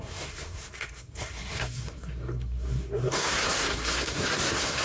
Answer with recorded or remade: remade